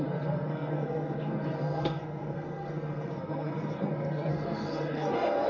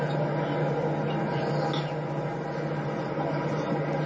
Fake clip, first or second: first